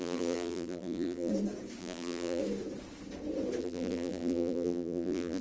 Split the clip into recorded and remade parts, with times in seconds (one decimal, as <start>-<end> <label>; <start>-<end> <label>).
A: 0.0-1.3 remade; 1.3-1.8 recorded; 1.8-2.4 remade; 2.4-3.6 recorded; 3.6-5.4 remade